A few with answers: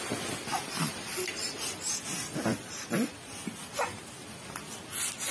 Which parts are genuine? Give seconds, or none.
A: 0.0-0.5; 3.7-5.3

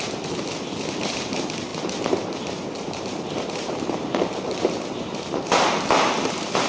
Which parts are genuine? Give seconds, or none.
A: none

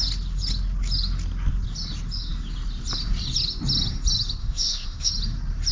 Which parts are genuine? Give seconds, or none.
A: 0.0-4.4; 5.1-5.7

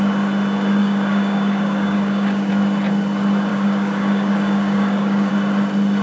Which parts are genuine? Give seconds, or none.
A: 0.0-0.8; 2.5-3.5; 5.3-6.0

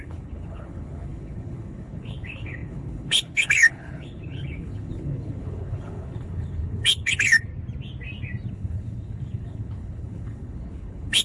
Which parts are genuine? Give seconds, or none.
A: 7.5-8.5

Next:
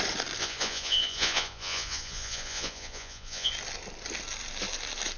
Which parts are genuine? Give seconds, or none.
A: 0.0-0.4; 3.5-5.2

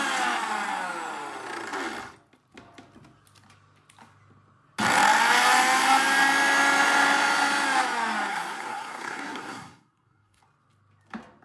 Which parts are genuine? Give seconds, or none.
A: 0.0-8.3; 10.4-11.4